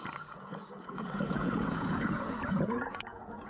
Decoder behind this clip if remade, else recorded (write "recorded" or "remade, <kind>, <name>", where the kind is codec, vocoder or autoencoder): remade, vocoder, Vocos